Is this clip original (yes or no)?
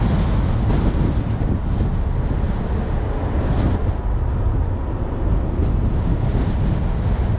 yes